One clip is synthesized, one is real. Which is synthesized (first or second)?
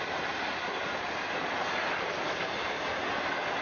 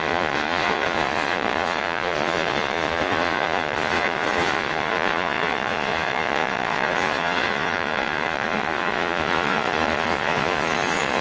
second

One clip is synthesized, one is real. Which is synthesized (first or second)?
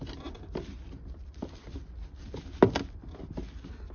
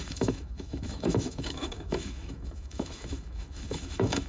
second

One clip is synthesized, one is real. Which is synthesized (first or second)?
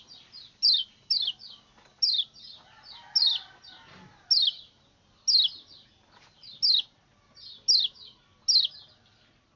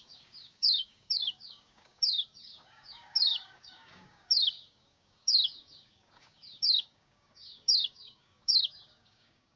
second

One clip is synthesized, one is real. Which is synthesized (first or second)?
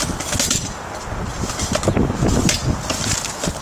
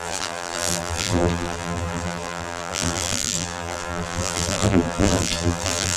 second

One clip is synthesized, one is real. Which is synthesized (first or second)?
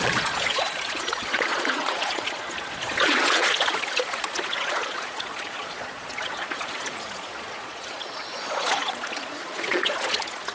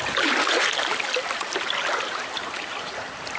first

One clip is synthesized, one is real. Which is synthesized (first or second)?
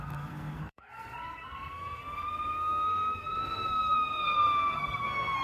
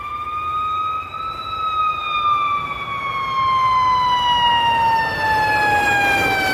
first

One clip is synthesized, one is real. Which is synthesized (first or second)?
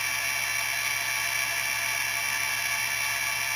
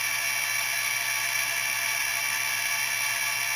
second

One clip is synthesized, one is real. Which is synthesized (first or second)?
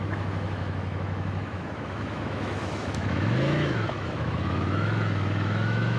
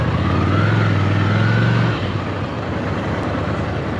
first